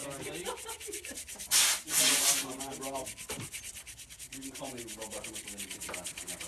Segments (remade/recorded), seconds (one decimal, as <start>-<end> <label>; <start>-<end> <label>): 0.0-2.6 remade; 2.6-6.5 recorded